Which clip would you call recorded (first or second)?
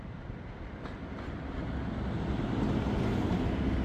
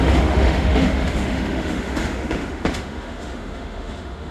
first